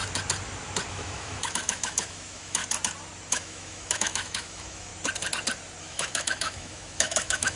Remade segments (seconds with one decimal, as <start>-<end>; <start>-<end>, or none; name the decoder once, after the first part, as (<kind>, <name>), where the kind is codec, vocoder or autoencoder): 0.9-2.6 (autoencoder, DAC-VAE); 3.3-4.9; 5.8-7.6